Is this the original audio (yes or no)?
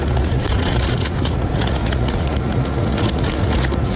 no